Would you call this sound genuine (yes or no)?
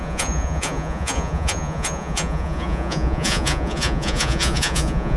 no